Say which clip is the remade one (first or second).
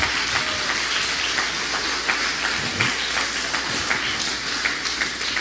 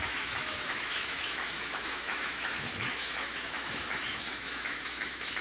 second